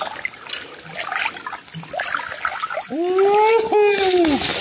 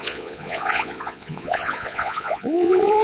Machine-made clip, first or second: second